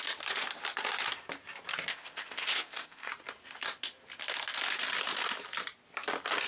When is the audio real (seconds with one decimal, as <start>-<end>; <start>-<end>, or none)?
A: 0.0-1.9; 3.1-6.5

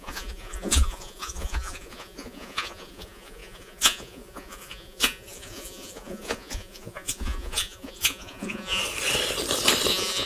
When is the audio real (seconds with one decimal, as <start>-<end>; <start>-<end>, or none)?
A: 8.8-9.9

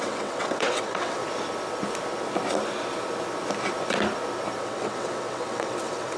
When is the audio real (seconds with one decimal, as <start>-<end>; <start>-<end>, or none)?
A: 1.2-4.6

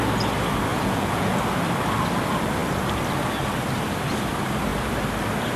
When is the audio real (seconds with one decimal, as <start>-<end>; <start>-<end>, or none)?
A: 0.0-0.7; 1.4-5.6

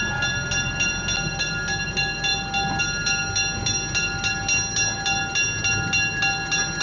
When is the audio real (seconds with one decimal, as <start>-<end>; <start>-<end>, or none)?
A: 0.0-6.8

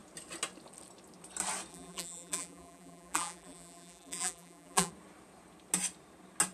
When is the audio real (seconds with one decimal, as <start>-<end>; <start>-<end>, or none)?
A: 0.0-1.7; 4.9-6.5